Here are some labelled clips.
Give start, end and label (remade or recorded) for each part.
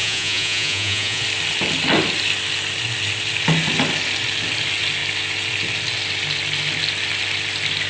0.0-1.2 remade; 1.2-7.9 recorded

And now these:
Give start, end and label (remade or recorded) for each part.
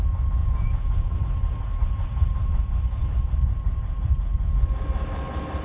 0.0-0.4 recorded; 0.4-1.1 remade; 1.1-5.6 recorded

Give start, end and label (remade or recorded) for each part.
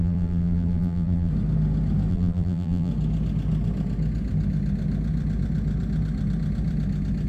0.0-1.3 remade; 1.3-2.1 recorded; 2.1-2.9 remade; 2.9-7.3 recorded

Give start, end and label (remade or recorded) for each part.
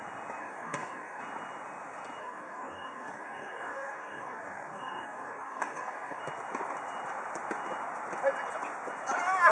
0.0-0.4 recorded; 0.4-1.2 remade; 1.2-2.2 recorded; 2.2-6.2 remade; 6.2-9.5 recorded